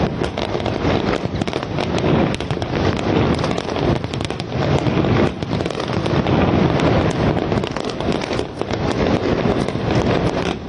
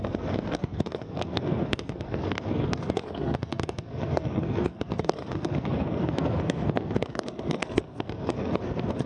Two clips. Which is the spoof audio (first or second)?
second